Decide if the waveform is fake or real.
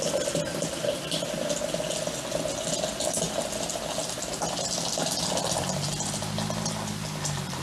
real